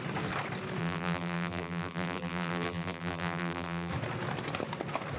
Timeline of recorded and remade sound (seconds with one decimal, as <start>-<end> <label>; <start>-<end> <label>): 0.0-0.8 recorded; 0.8-3.9 remade; 3.9-5.2 recorded